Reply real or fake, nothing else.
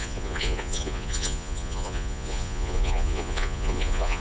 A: fake